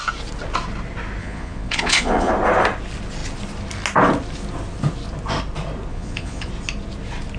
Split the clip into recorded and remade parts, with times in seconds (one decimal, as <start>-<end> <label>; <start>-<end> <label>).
0.0-1.2 recorded; 1.2-2.3 remade; 2.3-5.9 recorded; 5.9-6.5 remade; 6.5-7.4 recorded